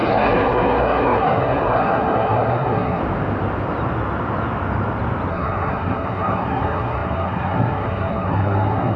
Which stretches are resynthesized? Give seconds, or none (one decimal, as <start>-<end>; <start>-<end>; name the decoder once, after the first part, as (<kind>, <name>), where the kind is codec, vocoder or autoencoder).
0.0-3.0 (codec, SNAC); 5.3-9.0